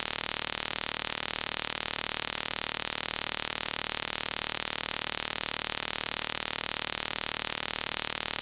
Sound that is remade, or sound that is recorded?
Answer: remade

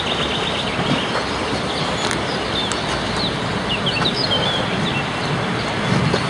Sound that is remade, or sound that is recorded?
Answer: recorded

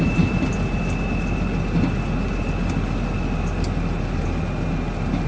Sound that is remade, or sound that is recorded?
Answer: recorded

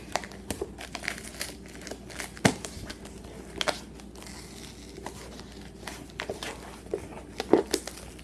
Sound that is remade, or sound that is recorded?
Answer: recorded